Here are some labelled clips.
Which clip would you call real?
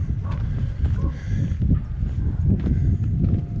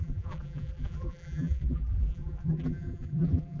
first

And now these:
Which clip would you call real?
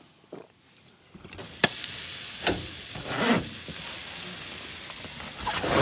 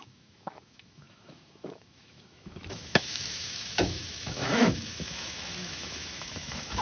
first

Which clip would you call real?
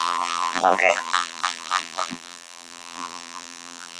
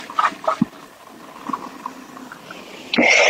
second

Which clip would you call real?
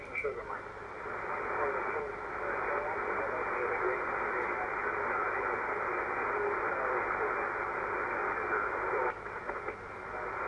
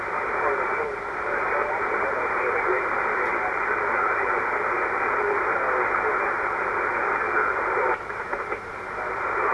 first